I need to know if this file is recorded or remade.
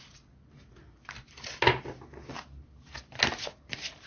recorded